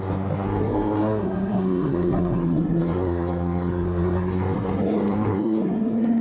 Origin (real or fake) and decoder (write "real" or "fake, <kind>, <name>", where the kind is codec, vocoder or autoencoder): fake, codec, SNAC